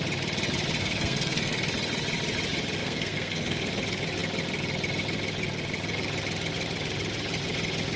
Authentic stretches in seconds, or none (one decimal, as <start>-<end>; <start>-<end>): 0.0-0.8; 1.7-2.8; 3.7-8.0